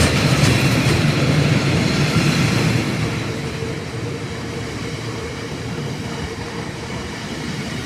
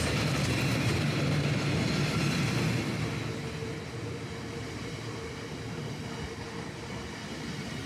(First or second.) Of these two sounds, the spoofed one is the first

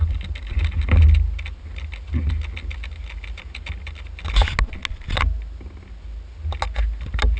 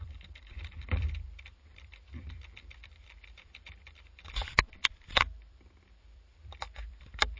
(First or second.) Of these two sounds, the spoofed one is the second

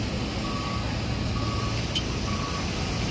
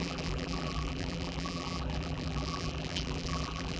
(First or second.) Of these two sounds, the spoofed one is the second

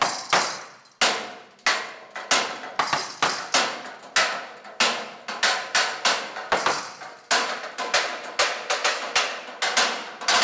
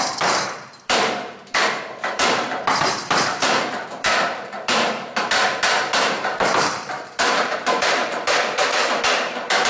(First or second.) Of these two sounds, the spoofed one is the second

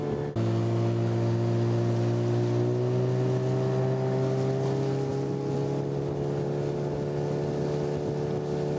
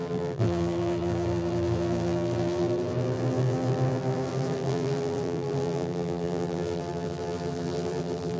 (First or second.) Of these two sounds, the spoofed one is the second